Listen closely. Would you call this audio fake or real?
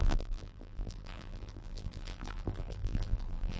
fake